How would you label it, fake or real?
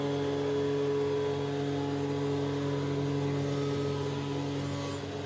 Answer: real